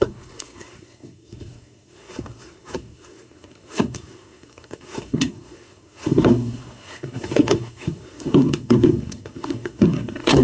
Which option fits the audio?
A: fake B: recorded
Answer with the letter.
A